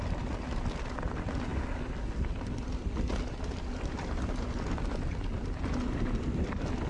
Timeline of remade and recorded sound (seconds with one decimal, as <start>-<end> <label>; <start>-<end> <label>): 0.0-6.9 recorded